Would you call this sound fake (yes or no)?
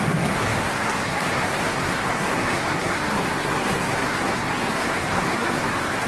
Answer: yes